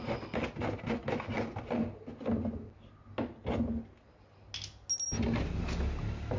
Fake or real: real